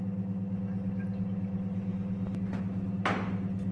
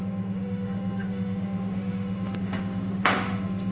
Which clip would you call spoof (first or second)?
second